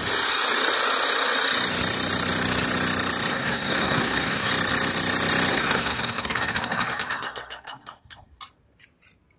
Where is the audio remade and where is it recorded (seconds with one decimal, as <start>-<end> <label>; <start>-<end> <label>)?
0.0-3.3 recorded; 3.3-4.5 remade; 4.5-5.5 recorded; 5.5-8.4 remade; 8.4-9.4 recorded